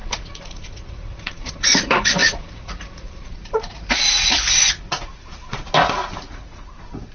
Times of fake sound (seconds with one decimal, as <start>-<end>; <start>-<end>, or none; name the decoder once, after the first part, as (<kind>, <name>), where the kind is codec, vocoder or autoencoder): 0.0-7.1 (vocoder, Vocos)